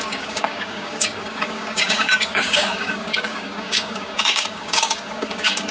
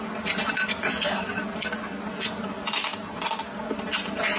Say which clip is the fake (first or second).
first